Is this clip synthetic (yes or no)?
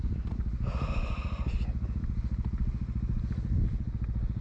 no